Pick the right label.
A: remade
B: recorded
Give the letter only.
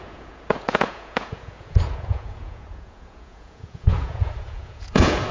A